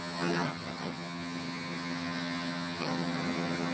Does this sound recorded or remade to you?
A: remade